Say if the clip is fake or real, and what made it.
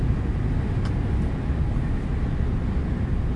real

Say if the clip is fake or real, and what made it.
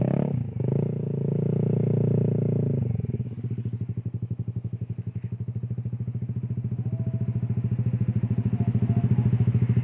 real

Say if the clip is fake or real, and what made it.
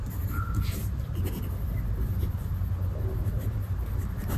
real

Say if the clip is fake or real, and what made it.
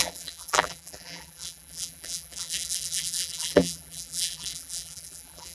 fake, vocoder, BigVGAN v2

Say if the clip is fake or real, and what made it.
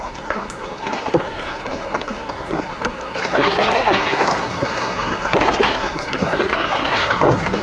fake, codec, SNAC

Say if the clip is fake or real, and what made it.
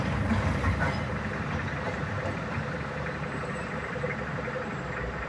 fake, vocoder, BigVGAN v2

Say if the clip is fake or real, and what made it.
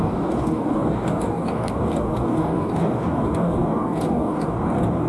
fake, codec, DAC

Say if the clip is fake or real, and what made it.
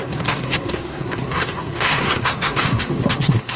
fake, codec, SNAC